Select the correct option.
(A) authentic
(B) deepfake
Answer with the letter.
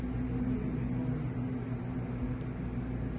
A